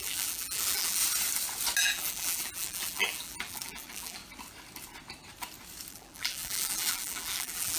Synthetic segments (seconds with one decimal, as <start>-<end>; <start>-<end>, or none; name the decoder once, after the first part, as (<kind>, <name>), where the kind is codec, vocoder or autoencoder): 0.0-1.0 (vocoder, BigVGAN v2); 1.8-4.2; 5.9-7.8